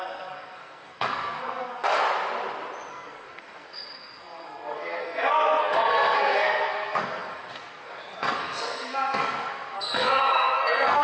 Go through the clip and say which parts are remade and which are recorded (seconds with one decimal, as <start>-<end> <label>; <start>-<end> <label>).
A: 0.0-2.0 remade; 2.0-2.9 recorded; 2.9-11.0 remade